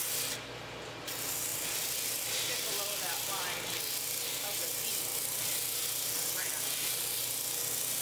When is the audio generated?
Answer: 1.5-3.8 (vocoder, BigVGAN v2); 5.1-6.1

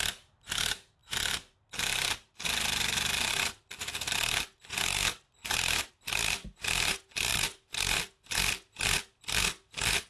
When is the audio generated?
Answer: none

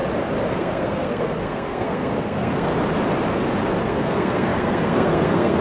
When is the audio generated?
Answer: 0.5-2.7 (codec, SNAC); 3.8-5.6

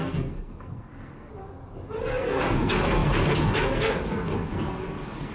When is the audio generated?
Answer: 0.0-1.3 (codec, SNAC); 2.1-5.3

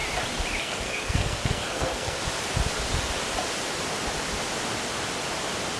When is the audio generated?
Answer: 0.6-2.2 (codec, SNAC)

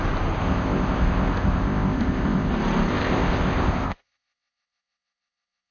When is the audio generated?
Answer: 0.4-2.5 (codec, ZipCodec); 2.9-5.7

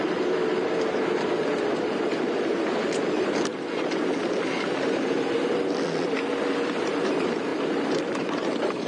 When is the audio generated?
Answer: 0.0-0.4 (vocoder, BigVGAN v2); 1.4-7.5; 8.1-8.9

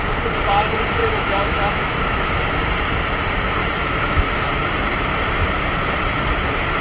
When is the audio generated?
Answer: 1.0-2.3 (autoencoder, DAC-VAE); 3.6-4.5